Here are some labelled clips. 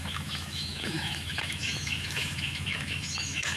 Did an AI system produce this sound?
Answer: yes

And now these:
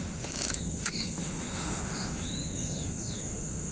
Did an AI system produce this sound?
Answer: yes